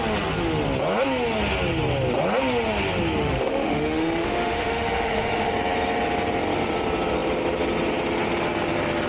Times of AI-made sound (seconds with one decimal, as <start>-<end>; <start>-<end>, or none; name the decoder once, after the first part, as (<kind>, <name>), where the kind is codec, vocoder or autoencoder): 3.2-5.5 (autoencoder, DAC-VAE)